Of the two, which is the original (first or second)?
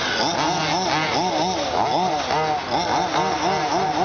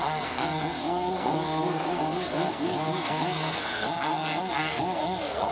first